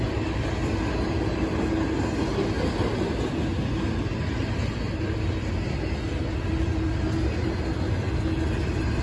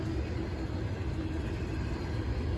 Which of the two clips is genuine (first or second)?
first